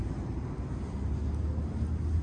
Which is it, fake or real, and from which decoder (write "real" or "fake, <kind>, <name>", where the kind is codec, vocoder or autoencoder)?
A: real